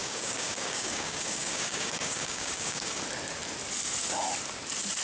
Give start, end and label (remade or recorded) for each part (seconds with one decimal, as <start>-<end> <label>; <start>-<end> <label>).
0.0-3.0 remade; 3.0-5.0 recorded